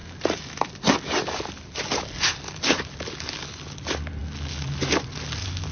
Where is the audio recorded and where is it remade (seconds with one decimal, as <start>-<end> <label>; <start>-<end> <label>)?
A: 0.0-5.7 recorded